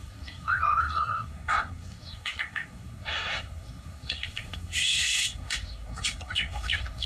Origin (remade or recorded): remade